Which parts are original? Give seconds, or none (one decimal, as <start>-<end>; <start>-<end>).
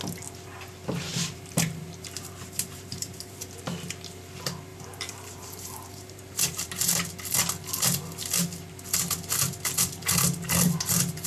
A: 0.0-1.1; 3.4-4.7; 6.7-11.3